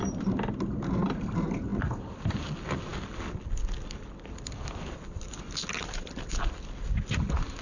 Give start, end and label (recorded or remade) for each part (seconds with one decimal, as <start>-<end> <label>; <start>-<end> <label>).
0.0-7.6 recorded